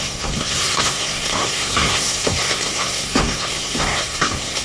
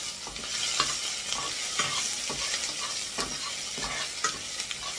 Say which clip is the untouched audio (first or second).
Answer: second